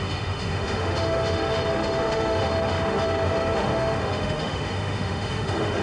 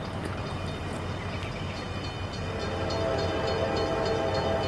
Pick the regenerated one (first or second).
first